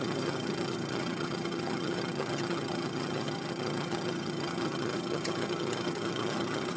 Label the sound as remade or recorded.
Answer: remade